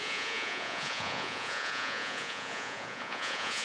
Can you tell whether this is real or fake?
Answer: fake